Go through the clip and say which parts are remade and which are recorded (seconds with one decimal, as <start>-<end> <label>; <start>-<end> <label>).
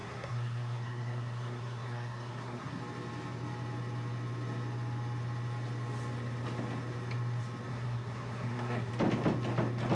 0.0-2.8 remade; 2.8-7.7 recorded; 7.7-8.9 remade; 8.9-9.9 recorded